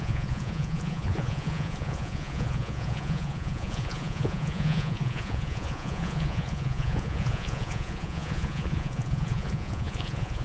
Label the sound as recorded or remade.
remade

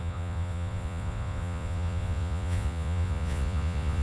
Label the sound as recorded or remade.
remade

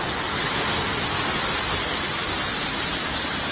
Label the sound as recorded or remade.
recorded